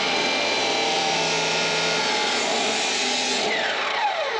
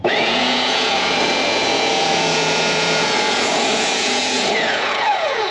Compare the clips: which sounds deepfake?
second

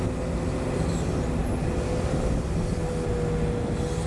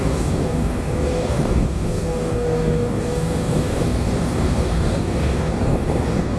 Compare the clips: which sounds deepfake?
second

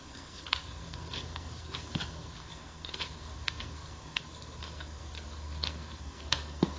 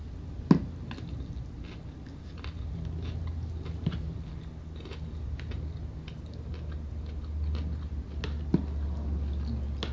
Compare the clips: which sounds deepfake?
first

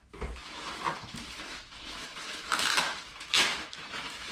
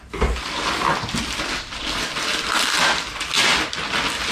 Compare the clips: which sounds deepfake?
first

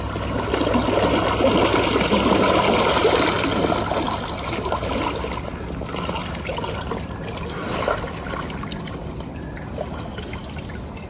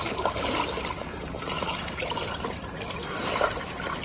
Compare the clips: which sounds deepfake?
second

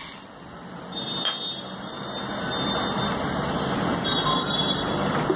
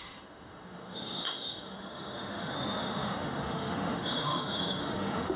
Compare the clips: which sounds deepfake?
second